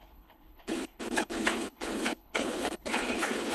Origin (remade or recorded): remade